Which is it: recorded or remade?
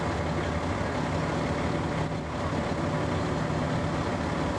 recorded